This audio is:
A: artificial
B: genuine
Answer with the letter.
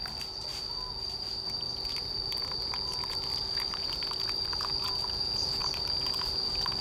B